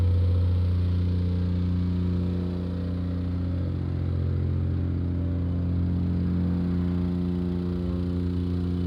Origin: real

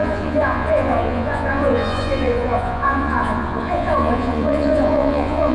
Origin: fake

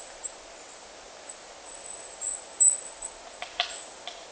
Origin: real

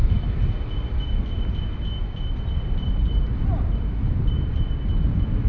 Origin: real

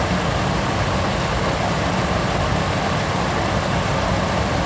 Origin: real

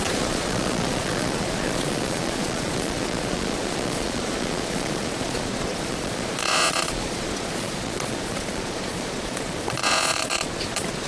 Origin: fake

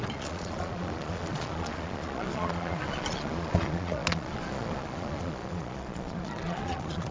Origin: fake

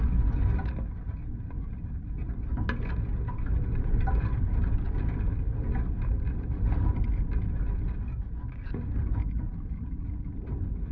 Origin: real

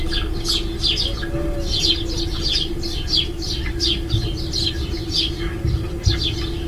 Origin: real